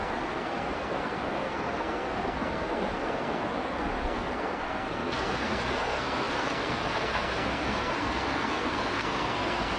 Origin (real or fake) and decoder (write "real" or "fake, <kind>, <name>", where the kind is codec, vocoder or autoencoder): fake, codec, SNAC